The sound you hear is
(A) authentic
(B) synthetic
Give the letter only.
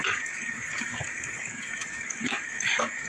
B